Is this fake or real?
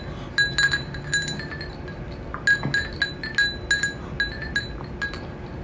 real